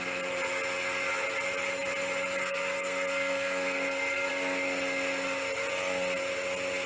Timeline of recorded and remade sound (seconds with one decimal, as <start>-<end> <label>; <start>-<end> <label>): 0.0-2.4 recorded; 2.4-4.3 remade; 4.3-6.9 recorded